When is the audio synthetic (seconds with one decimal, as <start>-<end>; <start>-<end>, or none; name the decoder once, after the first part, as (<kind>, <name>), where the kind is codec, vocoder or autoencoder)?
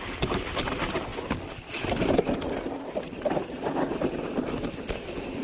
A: 0.0-1.1 (vocoder, BigVGAN v2); 4.3-5.4